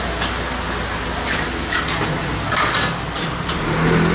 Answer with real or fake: real